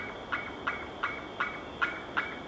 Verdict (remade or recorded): recorded